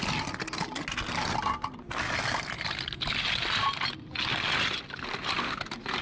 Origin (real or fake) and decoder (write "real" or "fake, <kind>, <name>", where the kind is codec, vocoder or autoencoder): real